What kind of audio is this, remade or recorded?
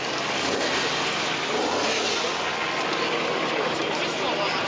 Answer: recorded